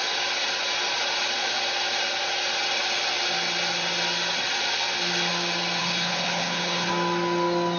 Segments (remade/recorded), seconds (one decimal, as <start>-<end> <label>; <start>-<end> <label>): 0.0-5.8 recorded; 5.8-6.9 remade; 6.9-7.8 recorded

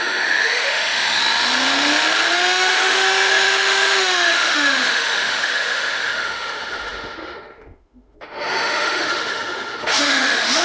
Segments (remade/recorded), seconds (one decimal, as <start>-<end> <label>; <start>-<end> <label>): 0.0-1.2 remade; 1.2-2.3 recorded; 2.3-10.6 remade

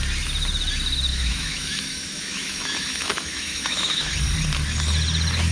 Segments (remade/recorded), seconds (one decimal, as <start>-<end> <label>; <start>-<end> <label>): 0.0-1.1 recorded; 1.1-4.1 remade; 4.1-5.5 recorded

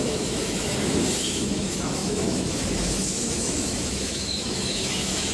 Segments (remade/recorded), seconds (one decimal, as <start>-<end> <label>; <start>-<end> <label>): 0.0-5.3 remade

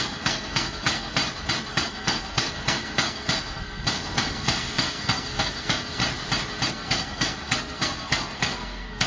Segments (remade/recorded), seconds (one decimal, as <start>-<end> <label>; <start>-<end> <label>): 0.0-1.2 remade; 1.2-1.7 recorded; 1.7-6.0 remade; 6.0-6.7 recorded; 6.7-9.1 remade

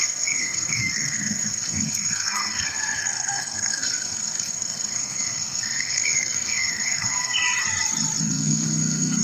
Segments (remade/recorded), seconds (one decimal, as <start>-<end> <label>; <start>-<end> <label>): 0.0-7.4 remade; 7.4-8.2 recorded; 8.2-9.2 remade

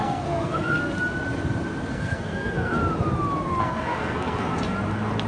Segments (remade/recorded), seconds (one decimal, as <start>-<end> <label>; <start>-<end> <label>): 0.0-0.8 remade; 0.8-1.9 recorded; 1.9-2.8 remade; 2.8-3.6 recorded; 3.6-4.5 remade; 4.5-5.3 recorded